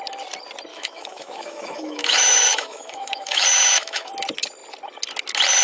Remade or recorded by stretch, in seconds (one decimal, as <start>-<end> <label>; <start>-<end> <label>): 0.0-0.7 recorded; 0.7-4.1 remade; 4.1-5.6 recorded